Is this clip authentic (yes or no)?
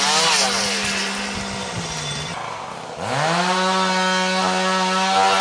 yes